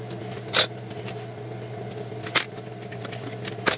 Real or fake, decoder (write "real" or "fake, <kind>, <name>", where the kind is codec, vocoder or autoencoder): real